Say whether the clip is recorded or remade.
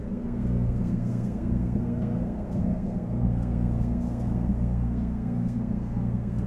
remade